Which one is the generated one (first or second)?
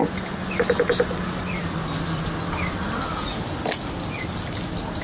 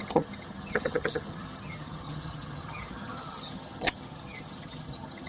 second